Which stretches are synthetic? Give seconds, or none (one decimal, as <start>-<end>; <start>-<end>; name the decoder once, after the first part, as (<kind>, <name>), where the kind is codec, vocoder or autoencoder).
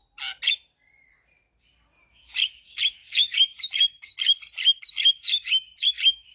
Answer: 2.1-4.1 (autoencoder, DAC-VAE); 4.8-6.3